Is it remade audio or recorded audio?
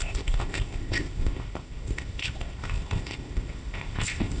remade